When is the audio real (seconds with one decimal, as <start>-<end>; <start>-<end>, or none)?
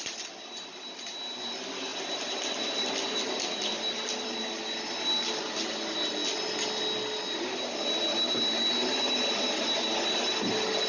0.0-10.9